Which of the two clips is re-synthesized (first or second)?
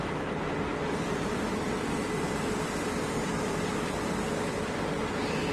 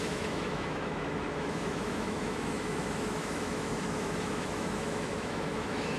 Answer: second